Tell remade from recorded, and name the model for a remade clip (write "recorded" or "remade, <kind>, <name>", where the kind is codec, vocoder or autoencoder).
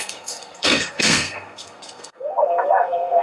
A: remade, codec, SNAC